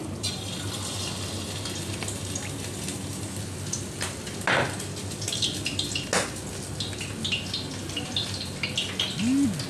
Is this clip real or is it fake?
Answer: real